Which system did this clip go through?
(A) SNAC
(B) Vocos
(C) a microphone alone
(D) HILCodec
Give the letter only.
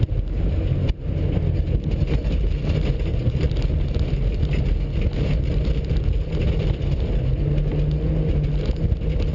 C